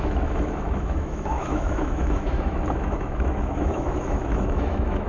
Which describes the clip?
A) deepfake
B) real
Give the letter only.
A